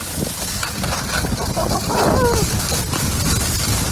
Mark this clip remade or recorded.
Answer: recorded